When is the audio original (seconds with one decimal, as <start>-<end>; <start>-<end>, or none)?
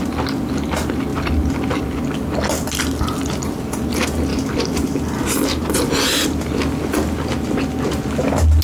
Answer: 0.0-8.6